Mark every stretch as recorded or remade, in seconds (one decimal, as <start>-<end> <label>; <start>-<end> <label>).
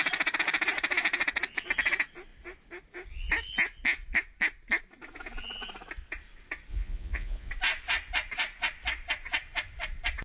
0.0-6.7 recorded; 6.7-7.5 remade; 7.5-10.2 recorded